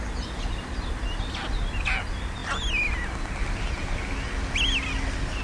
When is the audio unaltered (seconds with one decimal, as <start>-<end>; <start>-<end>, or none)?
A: 0.0-5.4